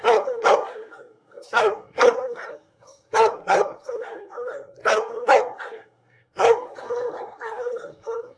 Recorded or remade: remade